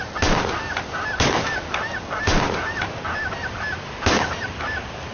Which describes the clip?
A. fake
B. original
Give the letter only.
B